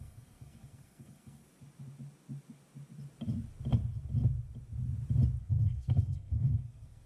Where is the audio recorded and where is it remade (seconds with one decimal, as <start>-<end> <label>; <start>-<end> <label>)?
0.0-1.4 remade; 1.4-5.4 recorded; 5.4-7.1 remade